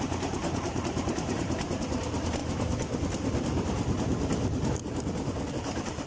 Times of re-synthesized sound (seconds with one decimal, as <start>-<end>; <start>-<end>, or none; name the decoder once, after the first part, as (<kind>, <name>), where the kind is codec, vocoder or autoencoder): 0.0-2.4 (vocoder, BigVGAN v2); 5.5-6.1